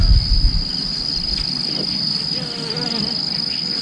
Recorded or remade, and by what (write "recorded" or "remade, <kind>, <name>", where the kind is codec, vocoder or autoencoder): recorded